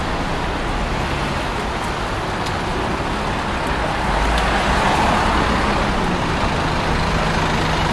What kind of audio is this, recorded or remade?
recorded